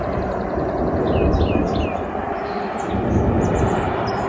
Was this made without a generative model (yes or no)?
yes